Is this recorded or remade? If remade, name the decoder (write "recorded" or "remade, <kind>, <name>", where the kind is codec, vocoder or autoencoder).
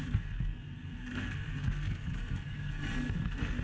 remade, codec, SNAC